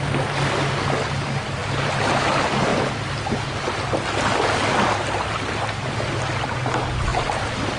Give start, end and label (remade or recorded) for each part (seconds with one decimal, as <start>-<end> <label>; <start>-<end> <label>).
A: 0.0-7.8 recorded

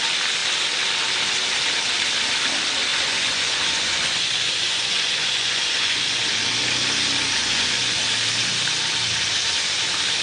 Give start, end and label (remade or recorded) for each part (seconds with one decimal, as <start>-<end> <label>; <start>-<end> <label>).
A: 0.0-2.9 recorded; 2.9-6.2 remade; 6.2-7.4 recorded; 7.4-8.0 remade; 8.0-10.2 recorded

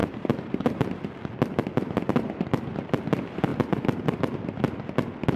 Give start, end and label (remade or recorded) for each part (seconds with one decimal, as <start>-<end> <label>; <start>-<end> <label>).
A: 0.0-1.0 remade; 1.0-3.5 recorded; 3.5-4.6 remade; 4.6-5.4 recorded

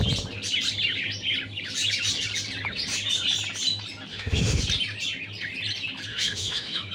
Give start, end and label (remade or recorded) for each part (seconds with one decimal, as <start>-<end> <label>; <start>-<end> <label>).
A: 0.0-4.1 recorded; 4.1-4.6 remade; 4.6-6.1 recorded; 6.1-6.9 remade